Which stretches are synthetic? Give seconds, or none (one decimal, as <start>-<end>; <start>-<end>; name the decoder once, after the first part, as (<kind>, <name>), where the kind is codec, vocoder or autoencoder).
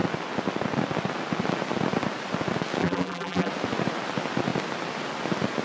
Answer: 2.8-3.5 (vocoder, BigVGAN v2)